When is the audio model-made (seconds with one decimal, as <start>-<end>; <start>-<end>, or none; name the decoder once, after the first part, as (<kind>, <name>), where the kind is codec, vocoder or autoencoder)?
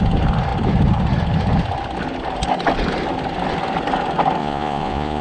4.4-5.2 (vocoder, Vocos)